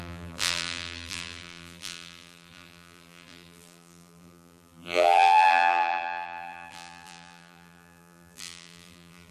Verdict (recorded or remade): remade